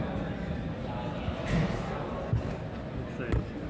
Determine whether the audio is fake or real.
real